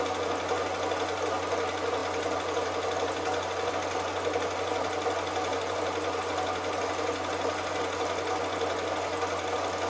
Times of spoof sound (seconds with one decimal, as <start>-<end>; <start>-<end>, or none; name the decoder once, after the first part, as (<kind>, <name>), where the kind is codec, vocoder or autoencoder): none